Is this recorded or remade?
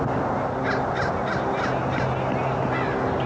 recorded